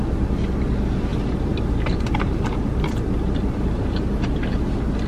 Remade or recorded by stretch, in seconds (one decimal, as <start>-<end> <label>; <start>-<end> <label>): 0.0-1.1 recorded; 1.1-4.2 remade; 4.2-5.1 recorded